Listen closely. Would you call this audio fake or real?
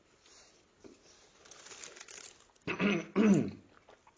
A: real